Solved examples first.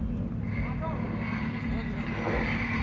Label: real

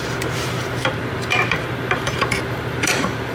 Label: fake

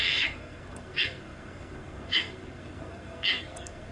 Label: fake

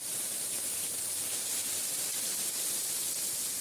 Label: real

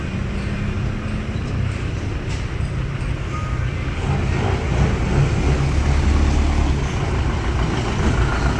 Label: real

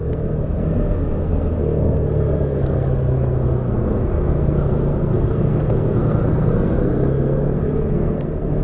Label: fake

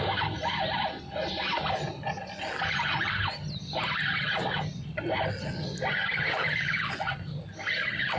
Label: real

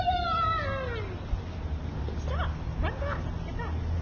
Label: real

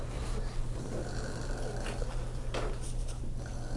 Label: real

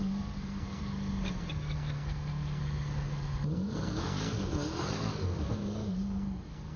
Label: fake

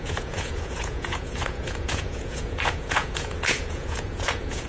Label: fake